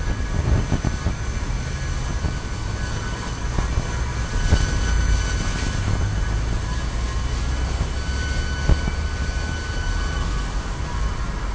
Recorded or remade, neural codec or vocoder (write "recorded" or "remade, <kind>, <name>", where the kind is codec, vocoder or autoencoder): recorded